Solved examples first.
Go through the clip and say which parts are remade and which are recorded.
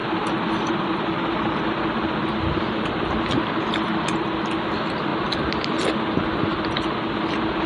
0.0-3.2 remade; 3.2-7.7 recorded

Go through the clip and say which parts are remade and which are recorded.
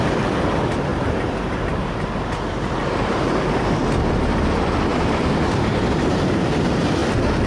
0.0-0.9 recorded; 0.9-4.0 remade; 4.0-4.9 recorded; 4.9-6.2 remade; 6.2-7.5 recorded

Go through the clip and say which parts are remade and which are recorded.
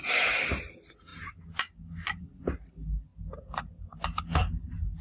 0.0-0.5 remade; 0.5-5.0 recorded